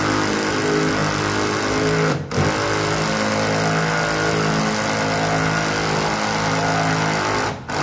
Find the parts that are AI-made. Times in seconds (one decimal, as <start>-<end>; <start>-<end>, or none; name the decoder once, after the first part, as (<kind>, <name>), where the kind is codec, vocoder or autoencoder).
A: none